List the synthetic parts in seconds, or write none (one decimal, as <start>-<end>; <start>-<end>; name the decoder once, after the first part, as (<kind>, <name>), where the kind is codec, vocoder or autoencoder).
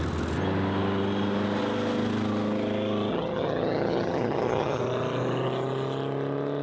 3.1-4.8 (vocoder, HiFi-GAN)